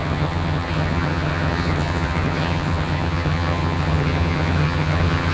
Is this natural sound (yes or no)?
no